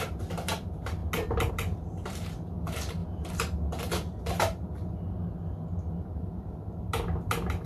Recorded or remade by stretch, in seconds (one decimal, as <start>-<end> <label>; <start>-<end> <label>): 0.0-1.0 remade; 1.0-1.5 recorded; 1.5-3.0 remade; 3.0-6.0 recorded; 6.0-7.7 remade